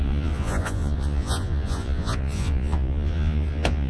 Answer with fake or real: fake